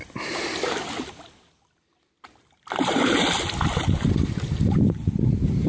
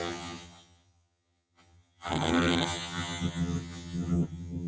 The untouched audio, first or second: first